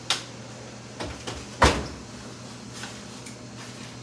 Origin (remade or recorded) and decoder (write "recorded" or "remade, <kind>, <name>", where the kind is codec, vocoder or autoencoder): recorded